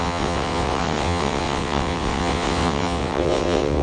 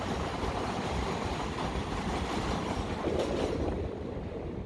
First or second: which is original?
second